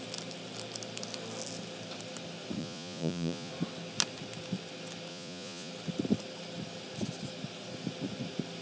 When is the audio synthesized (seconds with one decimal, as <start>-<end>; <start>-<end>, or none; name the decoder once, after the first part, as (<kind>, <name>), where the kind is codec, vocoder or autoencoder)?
2.6-3.5 (vocoder, Vocos); 5.1-5.7